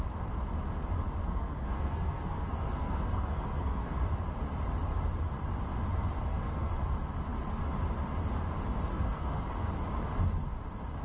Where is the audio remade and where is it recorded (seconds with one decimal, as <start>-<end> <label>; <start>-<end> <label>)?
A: 0.0-1.2 recorded; 1.2-3.9 remade; 3.9-6.3 recorded; 6.3-6.8 remade; 6.8-8.9 recorded; 8.9-9.7 remade; 9.7-11.0 recorded